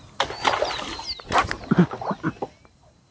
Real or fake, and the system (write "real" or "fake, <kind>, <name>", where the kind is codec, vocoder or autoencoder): real